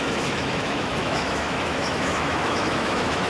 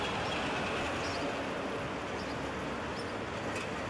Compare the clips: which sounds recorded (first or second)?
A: second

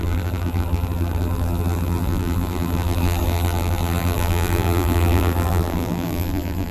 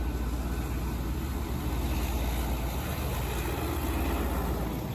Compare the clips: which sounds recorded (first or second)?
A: second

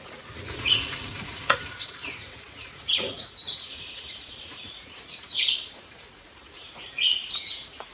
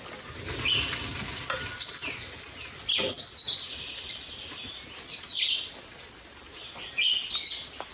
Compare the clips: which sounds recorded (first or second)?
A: second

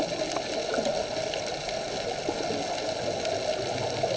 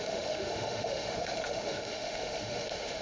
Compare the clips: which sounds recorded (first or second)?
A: first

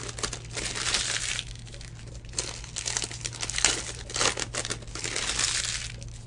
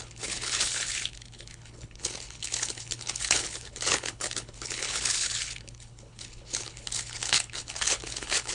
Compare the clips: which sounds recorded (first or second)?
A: first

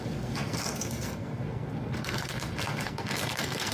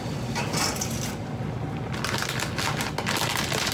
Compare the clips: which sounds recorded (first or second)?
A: second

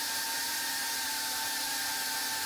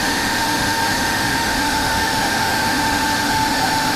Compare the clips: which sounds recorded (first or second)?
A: first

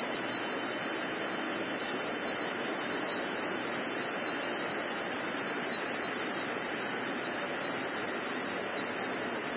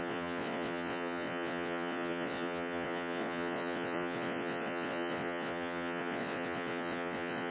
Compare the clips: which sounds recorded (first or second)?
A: first